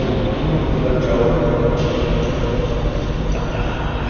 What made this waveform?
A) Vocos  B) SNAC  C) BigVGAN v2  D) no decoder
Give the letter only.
D